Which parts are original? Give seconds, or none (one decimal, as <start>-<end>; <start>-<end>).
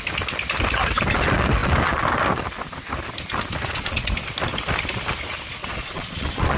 0.0-3.6; 4.1-5.6